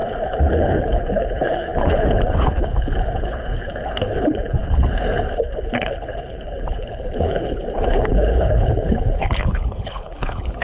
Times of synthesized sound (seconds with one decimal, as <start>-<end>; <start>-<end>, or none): 0.0-10.6